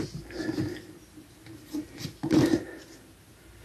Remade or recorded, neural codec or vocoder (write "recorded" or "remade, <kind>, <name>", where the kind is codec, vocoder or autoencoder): recorded